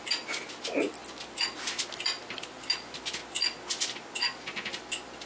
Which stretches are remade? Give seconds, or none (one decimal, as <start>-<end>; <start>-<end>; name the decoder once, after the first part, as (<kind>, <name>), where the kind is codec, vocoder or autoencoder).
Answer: none